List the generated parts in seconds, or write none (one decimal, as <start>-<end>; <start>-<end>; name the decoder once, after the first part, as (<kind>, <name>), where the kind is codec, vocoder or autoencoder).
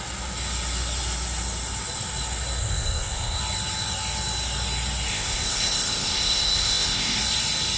2.6-3.4 (codec, ZipCodec); 5.1-7.2